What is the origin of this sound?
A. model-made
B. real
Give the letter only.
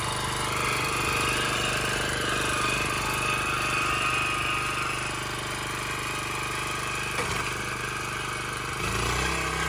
B